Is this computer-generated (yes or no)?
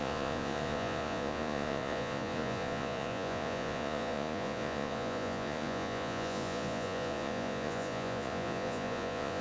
yes